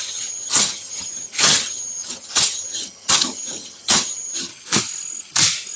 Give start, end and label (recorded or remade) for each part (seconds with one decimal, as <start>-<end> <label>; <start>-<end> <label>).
0.0-4.5 remade; 4.5-5.8 recorded